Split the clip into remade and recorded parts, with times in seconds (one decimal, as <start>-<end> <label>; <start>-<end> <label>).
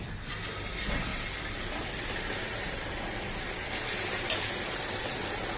0.0-5.6 recorded